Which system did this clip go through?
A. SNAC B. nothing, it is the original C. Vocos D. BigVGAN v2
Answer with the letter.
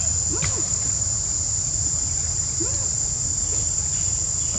D